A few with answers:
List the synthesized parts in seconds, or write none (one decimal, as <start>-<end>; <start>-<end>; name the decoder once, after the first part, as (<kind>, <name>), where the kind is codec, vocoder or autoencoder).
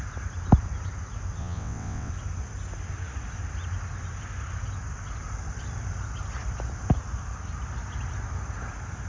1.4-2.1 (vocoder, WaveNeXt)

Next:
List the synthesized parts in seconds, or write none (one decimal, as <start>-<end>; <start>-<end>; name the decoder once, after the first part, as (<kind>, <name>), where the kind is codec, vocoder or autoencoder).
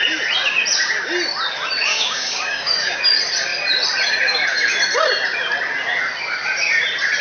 1.9-3.0 (codec, DAC)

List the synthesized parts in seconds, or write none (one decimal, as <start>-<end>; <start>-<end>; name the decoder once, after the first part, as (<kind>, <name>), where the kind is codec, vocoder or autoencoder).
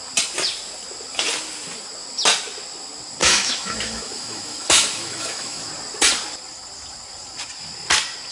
3.2-5.7 (autoencoder, DAC-VAE)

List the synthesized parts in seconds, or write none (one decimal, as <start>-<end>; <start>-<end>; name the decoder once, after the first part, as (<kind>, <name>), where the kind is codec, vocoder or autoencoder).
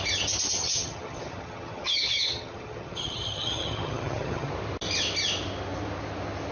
0.6-4.5 (vocoder, HiFi-GAN)